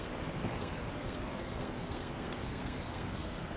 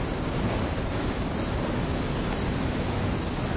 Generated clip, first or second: first